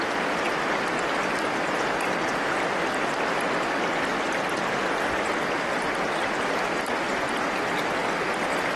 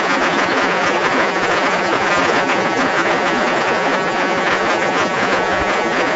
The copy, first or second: second